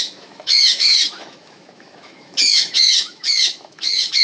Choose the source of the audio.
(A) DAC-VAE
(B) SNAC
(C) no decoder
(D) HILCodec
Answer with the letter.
A